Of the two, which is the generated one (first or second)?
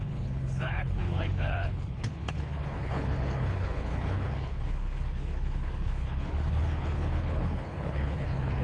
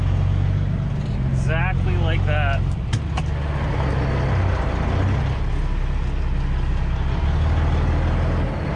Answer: first